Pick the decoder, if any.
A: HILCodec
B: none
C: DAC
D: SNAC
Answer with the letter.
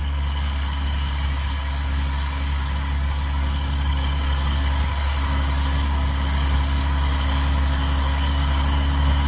C